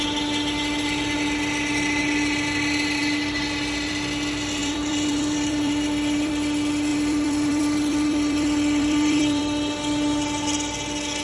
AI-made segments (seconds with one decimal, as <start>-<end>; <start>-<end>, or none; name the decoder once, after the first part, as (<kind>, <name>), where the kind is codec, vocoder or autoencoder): 4.6-6.3 (vocoder, BigVGAN v2); 6.9-9.4